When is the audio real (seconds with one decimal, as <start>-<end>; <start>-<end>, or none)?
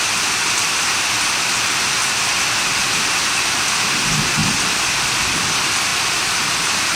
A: 4.4-5.0; 5.9-6.6